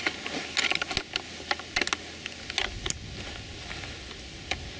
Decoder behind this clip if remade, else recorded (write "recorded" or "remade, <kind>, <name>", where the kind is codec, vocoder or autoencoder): recorded